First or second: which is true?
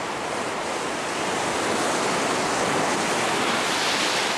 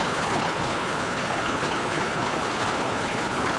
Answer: first